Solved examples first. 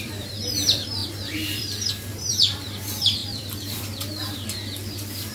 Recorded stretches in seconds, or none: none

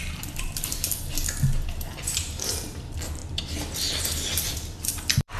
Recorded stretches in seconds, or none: 3.2-5.0

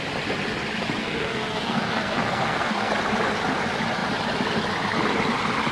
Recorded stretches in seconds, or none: 0.0-1.0; 2.9-5.7